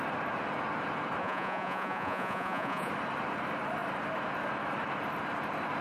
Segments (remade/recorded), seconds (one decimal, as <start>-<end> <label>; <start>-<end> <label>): 0.0-1.2 recorded; 1.2-2.9 remade; 2.9-5.8 recorded